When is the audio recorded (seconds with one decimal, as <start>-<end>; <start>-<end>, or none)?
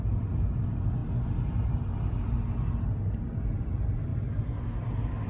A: 0.0-5.3